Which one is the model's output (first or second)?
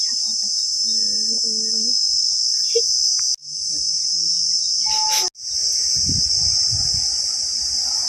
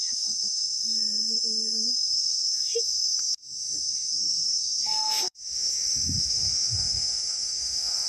second